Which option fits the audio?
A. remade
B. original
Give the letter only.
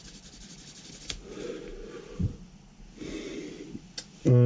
B